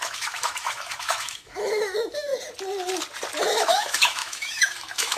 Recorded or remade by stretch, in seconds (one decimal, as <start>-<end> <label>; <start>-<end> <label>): 0.0-2.3 remade; 2.3-3.4 recorded; 3.4-5.2 remade